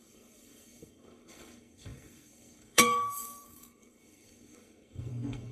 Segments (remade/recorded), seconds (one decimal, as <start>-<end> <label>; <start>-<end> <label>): 0.0-5.5 remade